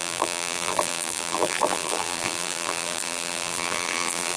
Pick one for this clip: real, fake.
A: fake